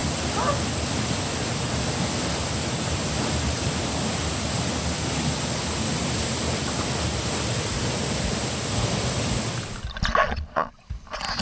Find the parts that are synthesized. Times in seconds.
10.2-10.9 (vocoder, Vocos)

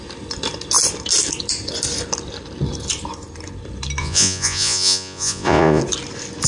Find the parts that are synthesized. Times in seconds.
4.0-5.8 (vocoder, Vocos)

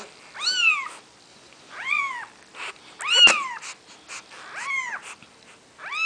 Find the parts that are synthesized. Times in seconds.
1.3-2.0 (vocoder, Vocos)

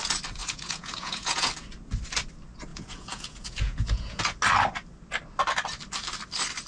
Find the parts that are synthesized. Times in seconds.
0.4-1.5 (vocoder, Vocos); 2.7-4.2

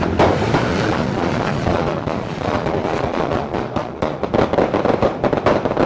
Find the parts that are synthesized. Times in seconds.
0.7-4.2 (vocoder, Vocos)

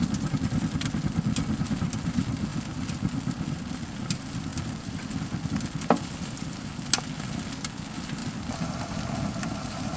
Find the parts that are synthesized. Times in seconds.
none

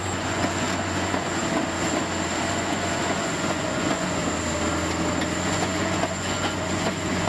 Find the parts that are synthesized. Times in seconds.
0.0-1.4 (vocoder, Vocos); 2.5-4.2; 5.4-7.3

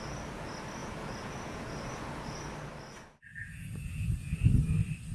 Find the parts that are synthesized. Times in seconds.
0.8-1.9 (vocoder, Vocos); 3.3-4.4